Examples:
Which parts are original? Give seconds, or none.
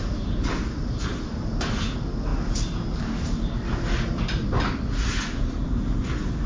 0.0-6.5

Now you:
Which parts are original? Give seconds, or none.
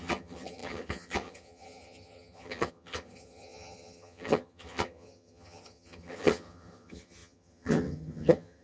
none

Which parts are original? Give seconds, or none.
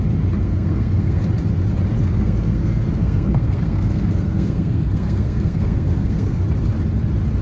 0.0-0.4; 1.2-2.0; 6.4-7.4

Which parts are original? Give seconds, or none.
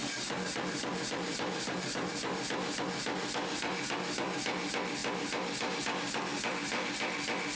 2.4-7.6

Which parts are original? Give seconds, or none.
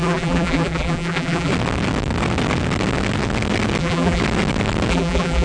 1.5-3.8; 4.2-4.9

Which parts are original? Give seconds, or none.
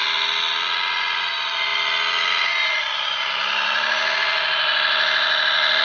0.0-5.8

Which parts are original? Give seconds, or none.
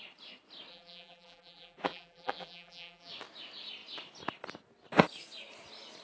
0.0-0.7; 3.1-6.0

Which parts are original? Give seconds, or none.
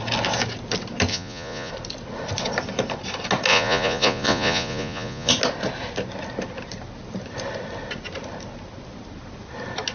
0.0-1.1; 1.7-3.5; 5.3-9.9